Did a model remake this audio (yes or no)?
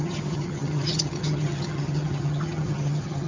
yes